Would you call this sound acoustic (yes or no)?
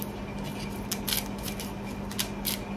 yes